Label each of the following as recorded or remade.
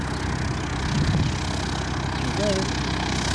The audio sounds recorded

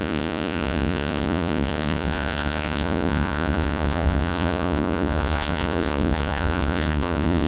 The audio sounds remade